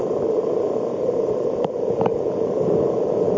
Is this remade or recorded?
recorded